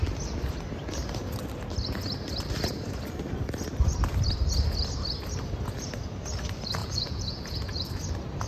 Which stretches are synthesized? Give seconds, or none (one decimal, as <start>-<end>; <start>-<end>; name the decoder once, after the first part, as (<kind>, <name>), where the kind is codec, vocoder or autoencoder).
6.8-7.9 (vocoder, Vocos)